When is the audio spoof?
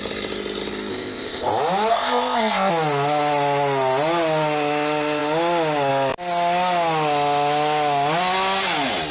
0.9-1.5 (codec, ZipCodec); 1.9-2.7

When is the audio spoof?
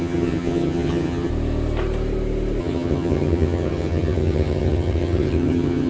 0.0-1.3 (vocoder, HiFi-GAN); 2.6-5.9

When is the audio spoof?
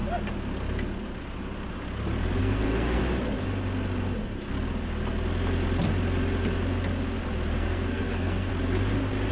2.4-3.0 (codec, SNAC); 7.5-8.5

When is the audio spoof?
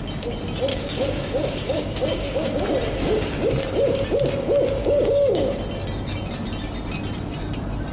0.7-2.6 (codec, DAC); 3.0-3.5; 4.8-5.6